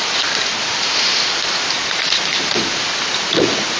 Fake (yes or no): yes